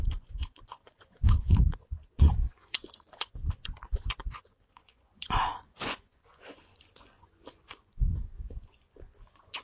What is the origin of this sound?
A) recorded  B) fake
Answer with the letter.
B